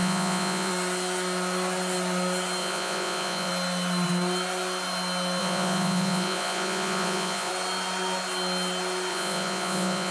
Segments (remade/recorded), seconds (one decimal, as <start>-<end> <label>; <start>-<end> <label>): 0.0-0.7 remade; 0.7-2.6 recorded; 2.6-3.5 remade; 3.5-5.4 recorded; 5.4-7.5 remade; 7.5-9.1 recorded; 9.1-10.1 remade